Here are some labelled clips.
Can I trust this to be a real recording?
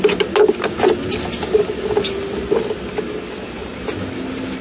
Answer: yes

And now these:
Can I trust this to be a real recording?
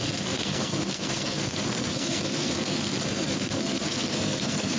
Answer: no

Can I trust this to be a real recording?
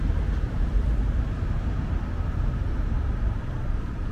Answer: no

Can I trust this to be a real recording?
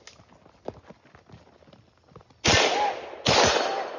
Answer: yes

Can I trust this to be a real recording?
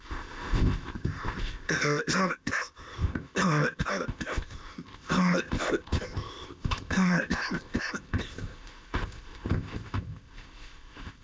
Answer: no